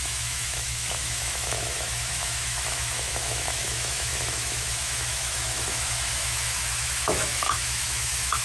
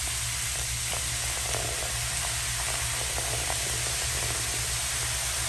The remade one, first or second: first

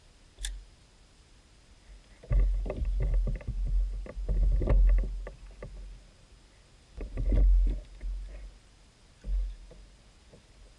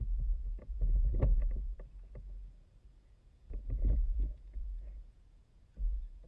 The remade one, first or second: second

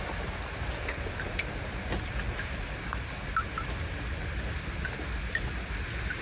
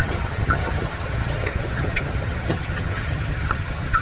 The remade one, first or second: second